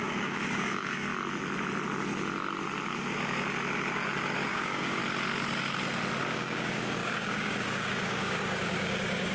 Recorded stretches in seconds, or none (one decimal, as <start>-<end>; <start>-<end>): 1.1-4.5; 5.0-6.2